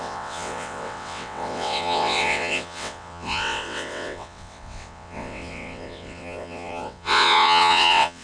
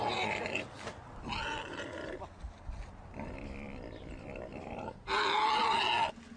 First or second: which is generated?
first